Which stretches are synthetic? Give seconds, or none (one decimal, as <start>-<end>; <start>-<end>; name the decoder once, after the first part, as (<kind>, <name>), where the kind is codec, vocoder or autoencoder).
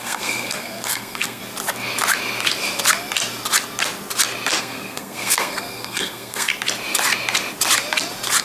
0.0-1.4 (codec, SNAC); 4.6-6.5